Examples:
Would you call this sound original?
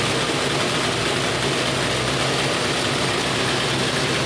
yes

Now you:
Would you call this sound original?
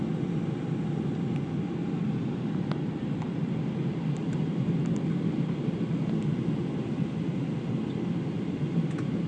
yes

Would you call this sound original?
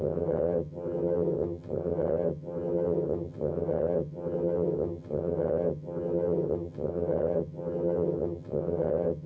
no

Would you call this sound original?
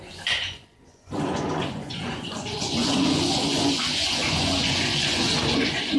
no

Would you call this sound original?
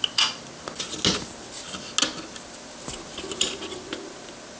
yes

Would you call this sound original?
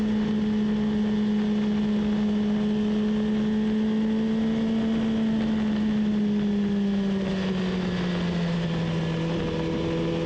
yes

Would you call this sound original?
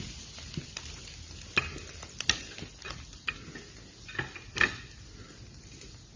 yes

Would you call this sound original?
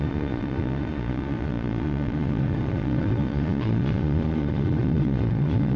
no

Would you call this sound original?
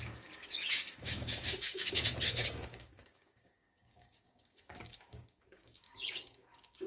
no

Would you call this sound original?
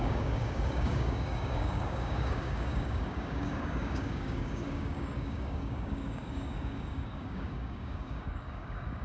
no